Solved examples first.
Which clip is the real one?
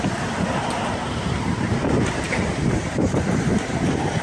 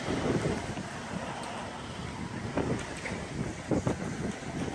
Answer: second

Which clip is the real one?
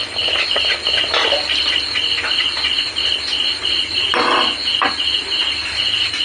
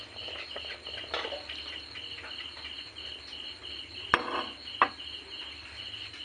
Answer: first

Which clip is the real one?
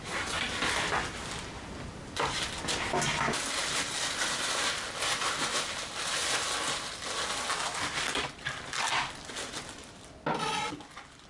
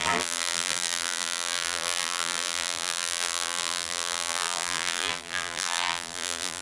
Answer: first